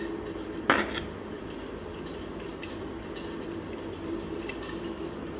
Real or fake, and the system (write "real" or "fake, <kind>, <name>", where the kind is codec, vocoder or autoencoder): real